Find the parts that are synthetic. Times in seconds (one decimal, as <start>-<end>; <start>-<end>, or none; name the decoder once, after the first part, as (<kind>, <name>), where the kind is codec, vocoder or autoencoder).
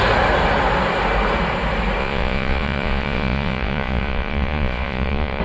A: 2.0-5.4 (vocoder, Vocos)